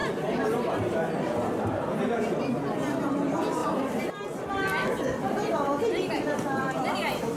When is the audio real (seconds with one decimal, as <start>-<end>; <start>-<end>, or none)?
0.7-3.6; 5.8-7.4